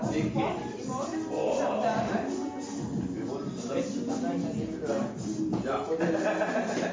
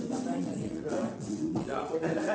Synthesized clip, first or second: second